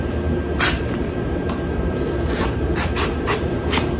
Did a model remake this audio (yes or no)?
yes